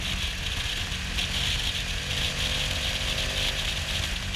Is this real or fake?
real